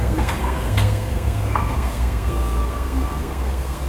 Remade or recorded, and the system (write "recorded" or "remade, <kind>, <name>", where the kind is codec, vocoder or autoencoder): remade, codec, SNAC